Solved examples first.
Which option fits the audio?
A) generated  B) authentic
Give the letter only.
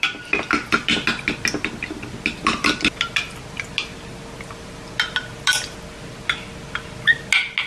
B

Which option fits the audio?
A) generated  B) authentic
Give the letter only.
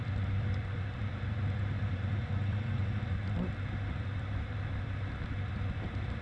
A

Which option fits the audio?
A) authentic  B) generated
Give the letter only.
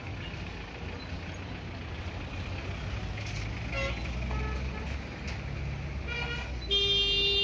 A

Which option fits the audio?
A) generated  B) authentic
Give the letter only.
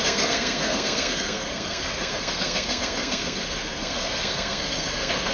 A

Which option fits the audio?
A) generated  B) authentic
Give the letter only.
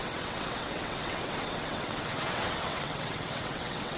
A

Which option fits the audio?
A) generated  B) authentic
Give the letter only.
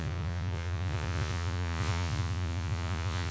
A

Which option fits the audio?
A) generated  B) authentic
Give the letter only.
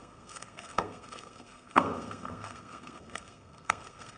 A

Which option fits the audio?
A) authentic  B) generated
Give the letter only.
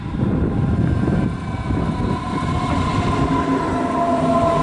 A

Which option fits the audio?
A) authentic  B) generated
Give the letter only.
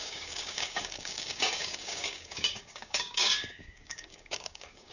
B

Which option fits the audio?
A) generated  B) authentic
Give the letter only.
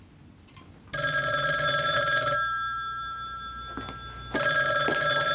B